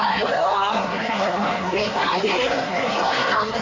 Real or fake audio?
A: fake